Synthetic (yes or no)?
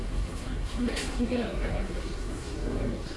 yes